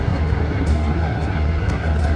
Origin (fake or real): fake